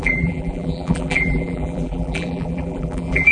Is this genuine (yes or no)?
no